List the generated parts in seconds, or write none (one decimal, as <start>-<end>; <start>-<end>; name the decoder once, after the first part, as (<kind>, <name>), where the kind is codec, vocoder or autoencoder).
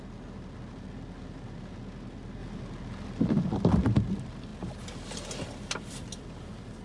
none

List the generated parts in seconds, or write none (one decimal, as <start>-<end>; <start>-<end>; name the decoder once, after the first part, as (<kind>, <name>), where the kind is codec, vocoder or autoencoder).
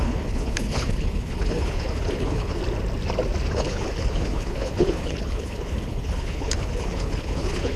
0.0-2.6 (codec, HILCodec); 3.5-7.8